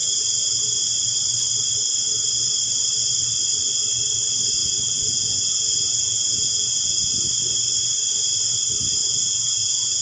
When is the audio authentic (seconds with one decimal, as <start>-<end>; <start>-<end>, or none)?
0.8-4.6; 7.1-9.0